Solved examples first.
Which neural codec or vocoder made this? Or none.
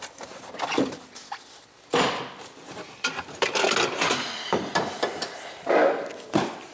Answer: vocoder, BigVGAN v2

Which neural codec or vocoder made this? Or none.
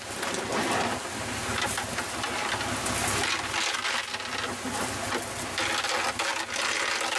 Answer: none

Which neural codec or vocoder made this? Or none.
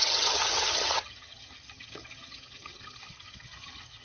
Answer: vocoder, HiFi-GAN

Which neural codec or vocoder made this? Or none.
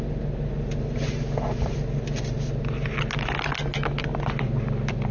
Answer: none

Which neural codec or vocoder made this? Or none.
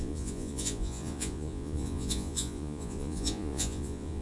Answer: vocoder, Vocos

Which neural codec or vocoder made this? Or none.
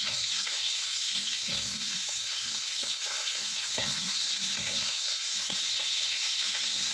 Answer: codec, SNAC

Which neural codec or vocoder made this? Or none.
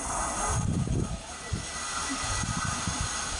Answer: none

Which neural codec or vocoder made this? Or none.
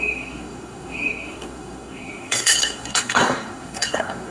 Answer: codec, SNAC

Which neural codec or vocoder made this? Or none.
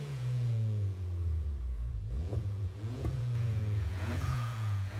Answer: vocoder, Vocos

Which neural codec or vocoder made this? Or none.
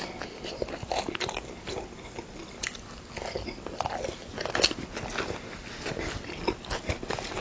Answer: none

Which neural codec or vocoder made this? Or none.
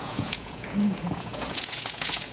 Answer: vocoder, Vocos